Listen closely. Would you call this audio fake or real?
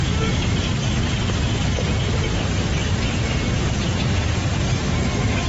fake